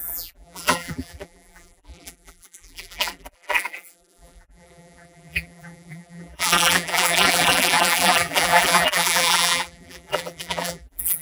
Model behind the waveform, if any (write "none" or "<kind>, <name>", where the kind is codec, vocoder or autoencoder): vocoder, BigVGAN v2